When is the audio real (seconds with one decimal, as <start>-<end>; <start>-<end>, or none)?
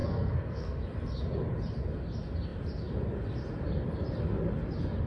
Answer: 0.8-5.1